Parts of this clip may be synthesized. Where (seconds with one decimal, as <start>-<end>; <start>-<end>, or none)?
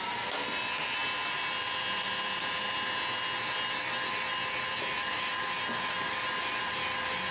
none